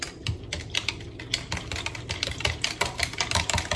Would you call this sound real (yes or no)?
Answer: yes